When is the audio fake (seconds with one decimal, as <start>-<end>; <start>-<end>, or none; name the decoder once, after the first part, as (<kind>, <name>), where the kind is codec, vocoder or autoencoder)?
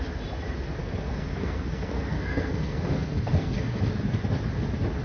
0.8-3.8 (codec, SNAC)